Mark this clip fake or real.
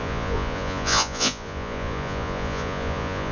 fake